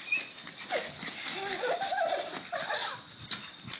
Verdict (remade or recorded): recorded